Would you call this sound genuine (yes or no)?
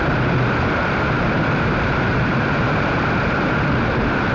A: no